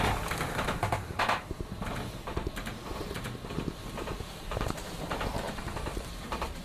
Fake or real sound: fake